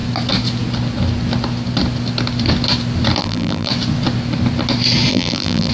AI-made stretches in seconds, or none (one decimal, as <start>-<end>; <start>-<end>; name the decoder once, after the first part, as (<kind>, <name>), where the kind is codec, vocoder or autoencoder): 3.2-3.7 (vocoder, BigVGAN v2); 5.1-5.7